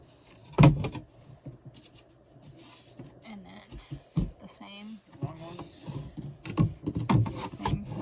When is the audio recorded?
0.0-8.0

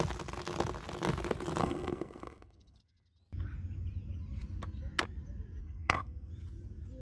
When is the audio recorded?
0.0-1.6; 2.8-5.6; 6.3-7.0

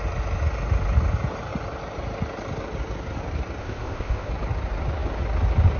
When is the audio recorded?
0.0-3.6; 4.3-5.8

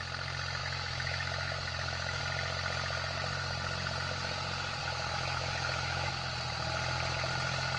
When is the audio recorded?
0.0-0.6; 2.2-4.8; 6.1-7.8

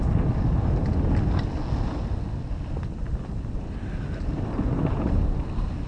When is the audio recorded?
0.0-5.9

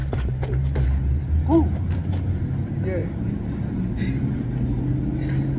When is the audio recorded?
2.1-3.0; 4.0-5.6

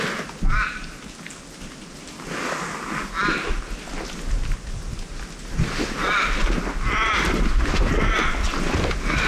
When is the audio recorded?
0.0-9.3